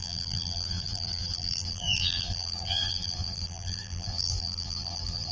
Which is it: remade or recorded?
remade